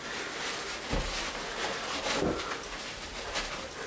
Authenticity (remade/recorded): remade